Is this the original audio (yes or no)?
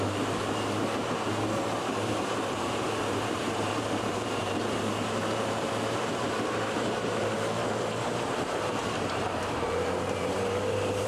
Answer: no